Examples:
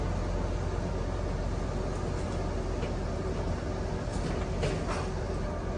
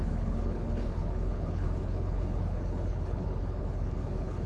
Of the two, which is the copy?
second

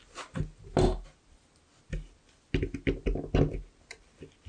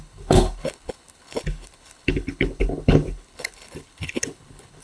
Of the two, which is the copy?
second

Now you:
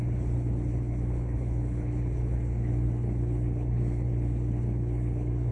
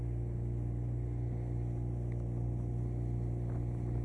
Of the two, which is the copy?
first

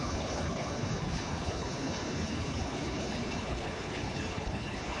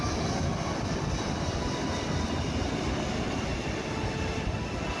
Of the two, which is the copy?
first